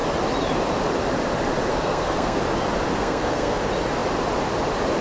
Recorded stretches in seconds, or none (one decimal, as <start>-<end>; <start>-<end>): 0.0-1.7; 2.4-3.0; 3.6-5.0